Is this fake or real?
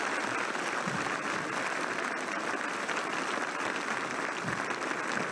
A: real